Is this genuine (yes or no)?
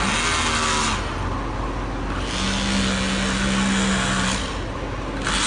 yes